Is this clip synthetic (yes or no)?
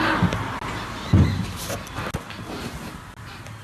no